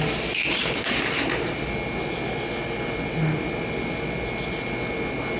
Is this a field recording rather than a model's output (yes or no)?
yes